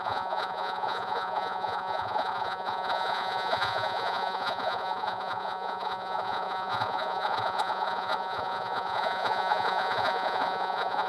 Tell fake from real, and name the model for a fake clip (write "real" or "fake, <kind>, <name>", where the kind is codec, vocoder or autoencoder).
fake, vocoder, Vocos